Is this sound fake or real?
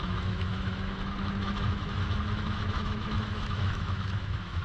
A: fake